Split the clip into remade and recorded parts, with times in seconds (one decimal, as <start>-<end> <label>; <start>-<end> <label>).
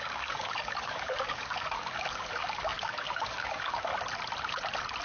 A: 0.0-3.9 remade; 3.9-5.0 recorded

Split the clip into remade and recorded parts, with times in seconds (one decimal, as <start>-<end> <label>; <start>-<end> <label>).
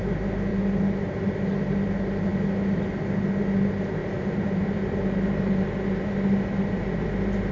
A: 0.0-0.5 recorded; 0.5-1.2 remade; 1.2-4.0 recorded; 4.0-5.7 remade; 5.7-7.5 recorded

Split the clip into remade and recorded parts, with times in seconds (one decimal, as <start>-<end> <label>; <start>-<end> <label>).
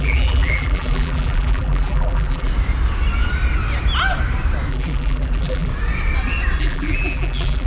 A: 0.0-2.5 remade; 2.5-4.7 recorded; 4.7-5.7 remade; 5.7-6.6 recorded; 6.6-7.7 remade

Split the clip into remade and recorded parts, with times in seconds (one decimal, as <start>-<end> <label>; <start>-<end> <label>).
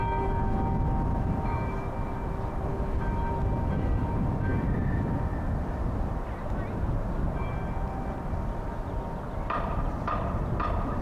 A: 0.0-11.0 recorded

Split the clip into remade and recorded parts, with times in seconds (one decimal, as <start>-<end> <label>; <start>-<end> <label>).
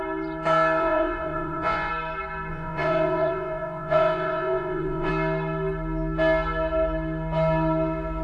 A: 0.0-0.8 recorded; 0.8-1.9 remade; 1.9-2.5 recorded; 2.5-5.1 remade; 5.1-8.2 recorded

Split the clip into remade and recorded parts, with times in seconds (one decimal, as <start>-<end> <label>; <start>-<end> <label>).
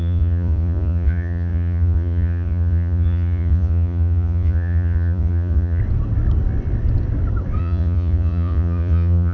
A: 0.0-5.8 remade; 5.8-7.6 recorded; 7.6-9.3 remade